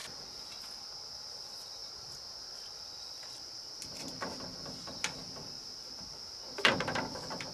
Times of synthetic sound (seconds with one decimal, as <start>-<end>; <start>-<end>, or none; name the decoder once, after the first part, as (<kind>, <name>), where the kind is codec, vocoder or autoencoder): none

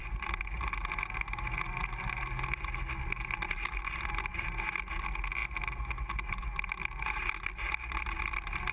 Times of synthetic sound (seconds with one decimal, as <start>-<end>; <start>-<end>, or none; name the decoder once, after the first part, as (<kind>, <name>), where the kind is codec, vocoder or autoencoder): none

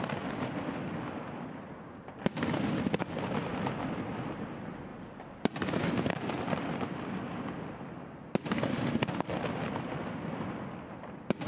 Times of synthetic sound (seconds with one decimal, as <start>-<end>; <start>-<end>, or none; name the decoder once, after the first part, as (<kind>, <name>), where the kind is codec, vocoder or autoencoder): none